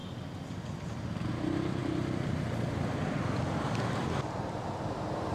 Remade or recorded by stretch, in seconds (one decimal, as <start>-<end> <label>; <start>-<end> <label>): 0.0-1.8 recorded; 1.8-5.3 remade